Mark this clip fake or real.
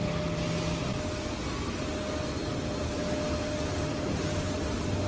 real